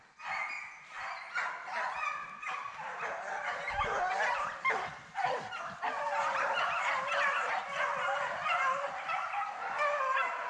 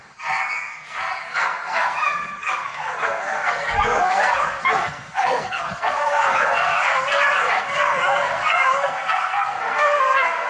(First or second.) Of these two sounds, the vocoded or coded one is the second